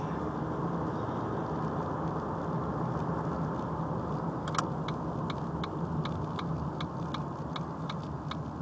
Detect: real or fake real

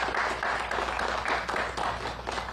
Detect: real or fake real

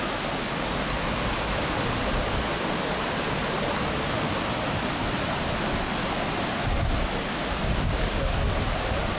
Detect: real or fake real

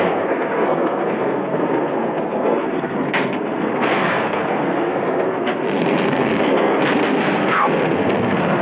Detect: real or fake fake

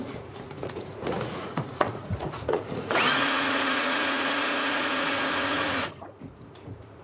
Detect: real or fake fake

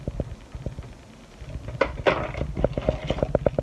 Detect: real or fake real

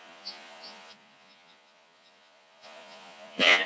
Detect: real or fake fake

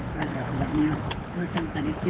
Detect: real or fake fake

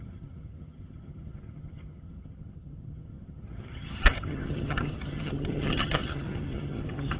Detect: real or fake fake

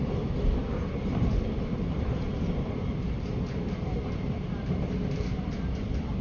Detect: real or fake fake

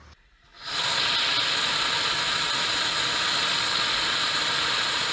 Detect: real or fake real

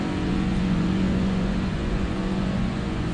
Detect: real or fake fake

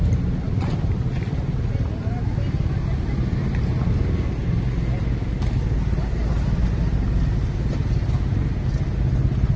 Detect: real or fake real